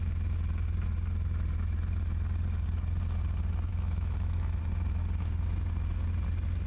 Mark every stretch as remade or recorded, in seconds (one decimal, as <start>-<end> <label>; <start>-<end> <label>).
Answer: 0.0-3.7 recorded; 3.7-4.6 remade; 4.6-6.7 recorded